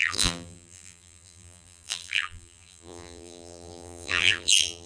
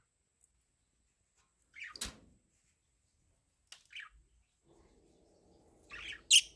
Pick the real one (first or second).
second